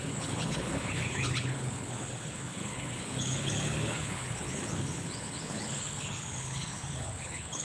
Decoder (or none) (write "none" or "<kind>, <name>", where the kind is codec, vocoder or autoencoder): codec, HILCodec